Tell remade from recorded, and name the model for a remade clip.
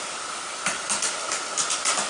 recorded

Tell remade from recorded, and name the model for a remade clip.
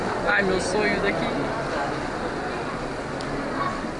recorded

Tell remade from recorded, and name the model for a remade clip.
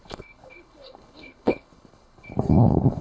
remade, codec, HILCodec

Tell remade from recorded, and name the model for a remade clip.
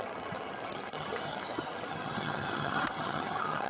remade, vocoder, HiFi-GAN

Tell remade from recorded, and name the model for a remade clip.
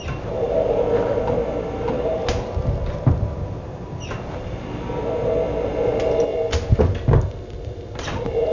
recorded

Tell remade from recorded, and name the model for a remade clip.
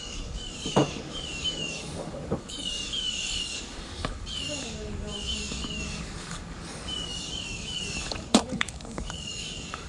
remade, codec, DAC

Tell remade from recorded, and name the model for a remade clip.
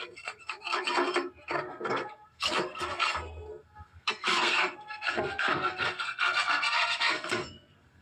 remade, codec, SNAC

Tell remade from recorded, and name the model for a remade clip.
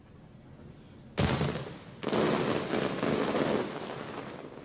recorded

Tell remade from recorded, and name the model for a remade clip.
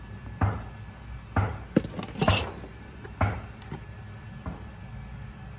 recorded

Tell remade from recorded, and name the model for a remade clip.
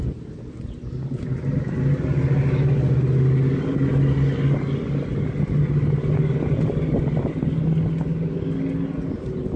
recorded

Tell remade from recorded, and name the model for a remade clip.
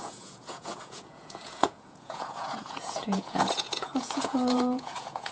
remade, vocoder, Vocos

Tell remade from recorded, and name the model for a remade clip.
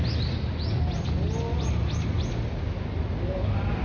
recorded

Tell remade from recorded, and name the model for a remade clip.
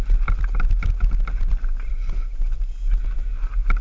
recorded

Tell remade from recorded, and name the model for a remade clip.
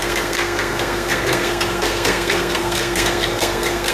remade, codec, SNAC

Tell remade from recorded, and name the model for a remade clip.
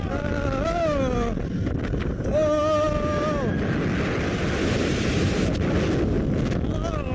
recorded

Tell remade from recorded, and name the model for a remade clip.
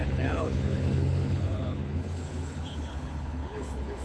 remade, codec, HILCodec